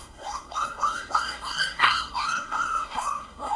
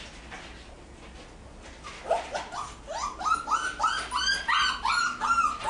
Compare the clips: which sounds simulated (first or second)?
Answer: first